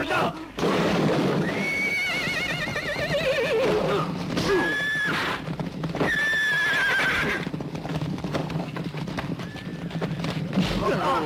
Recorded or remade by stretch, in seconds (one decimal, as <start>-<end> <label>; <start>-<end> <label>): 0.0-1.9 remade; 1.9-7.9 recorded; 7.9-8.8 remade; 8.8-11.3 recorded